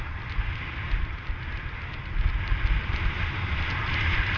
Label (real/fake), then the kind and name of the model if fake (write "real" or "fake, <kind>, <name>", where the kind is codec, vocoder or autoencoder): real